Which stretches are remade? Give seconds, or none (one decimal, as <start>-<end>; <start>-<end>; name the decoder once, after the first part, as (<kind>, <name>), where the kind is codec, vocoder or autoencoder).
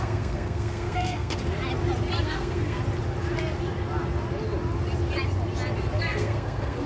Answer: 0.0-1.4 (codec, SNAC); 2.2-2.8; 6.0-6.9